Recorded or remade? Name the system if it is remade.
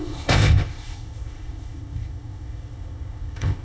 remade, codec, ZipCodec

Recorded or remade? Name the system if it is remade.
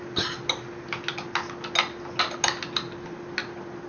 recorded